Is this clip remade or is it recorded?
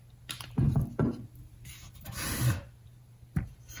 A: remade